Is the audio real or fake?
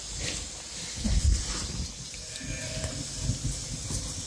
real